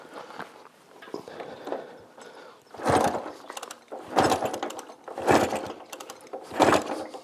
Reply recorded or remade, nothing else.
recorded